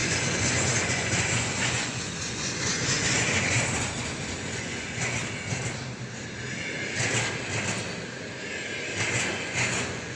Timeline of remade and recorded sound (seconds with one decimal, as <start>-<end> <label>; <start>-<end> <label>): 0.0-5.2 remade; 5.2-9.1 recorded; 9.1-10.2 remade